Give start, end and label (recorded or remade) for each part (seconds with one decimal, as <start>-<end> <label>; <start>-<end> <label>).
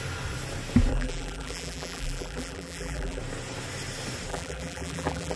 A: 0.0-0.9 recorded; 0.9-3.2 remade; 3.2-4.3 recorded; 4.3-5.4 remade